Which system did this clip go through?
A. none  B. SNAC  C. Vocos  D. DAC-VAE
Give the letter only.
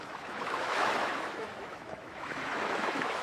D